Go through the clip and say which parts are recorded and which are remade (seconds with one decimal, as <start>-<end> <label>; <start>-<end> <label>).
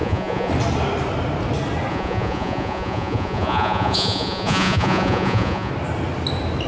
0.0-0.5 remade; 0.5-1.9 recorded; 1.9-5.7 remade; 5.7-6.7 recorded